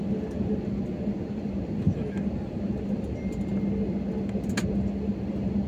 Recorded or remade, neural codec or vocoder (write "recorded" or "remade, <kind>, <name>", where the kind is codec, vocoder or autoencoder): recorded